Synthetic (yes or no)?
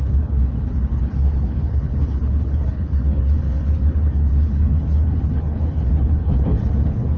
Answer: yes